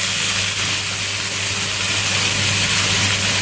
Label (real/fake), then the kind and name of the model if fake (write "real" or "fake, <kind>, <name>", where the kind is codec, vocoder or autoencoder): real